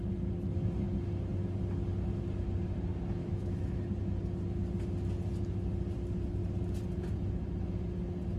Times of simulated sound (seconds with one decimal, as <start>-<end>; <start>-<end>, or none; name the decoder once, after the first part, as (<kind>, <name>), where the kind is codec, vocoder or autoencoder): 3.2-3.8 (autoencoder, DAC-VAE)